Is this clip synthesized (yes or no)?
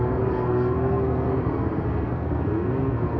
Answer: yes